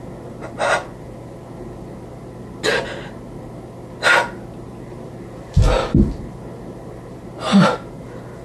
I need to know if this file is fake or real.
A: real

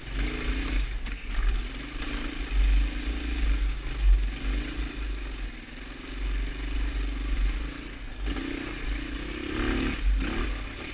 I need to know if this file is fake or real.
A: real